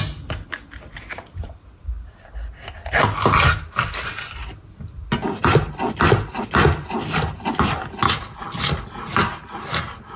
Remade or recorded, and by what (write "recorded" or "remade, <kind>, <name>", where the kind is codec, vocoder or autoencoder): recorded